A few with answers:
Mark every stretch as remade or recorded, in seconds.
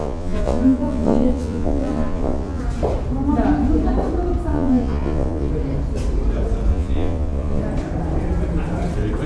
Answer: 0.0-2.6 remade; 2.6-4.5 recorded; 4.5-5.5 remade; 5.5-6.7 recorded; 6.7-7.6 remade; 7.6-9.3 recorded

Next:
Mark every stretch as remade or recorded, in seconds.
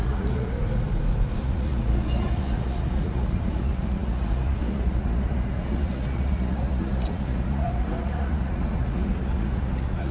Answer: 0.0-0.6 remade; 0.6-1.4 recorded; 1.4-10.1 remade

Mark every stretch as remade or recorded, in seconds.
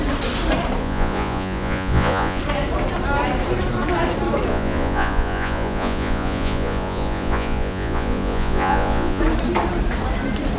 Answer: 0.0-0.8 recorded; 0.8-2.4 remade; 2.4-4.5 recorded; 4.5-9.2 remade; 9.2-10.6 recorded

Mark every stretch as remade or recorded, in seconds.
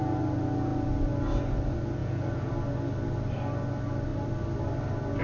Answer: 0.0-2.0 recorded; 2.0-2.5 remade; 2.5-5.2 recorded